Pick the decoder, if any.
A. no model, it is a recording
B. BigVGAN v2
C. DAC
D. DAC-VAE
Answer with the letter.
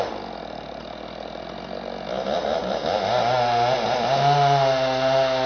A